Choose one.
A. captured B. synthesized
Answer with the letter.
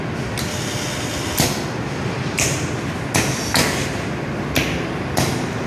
A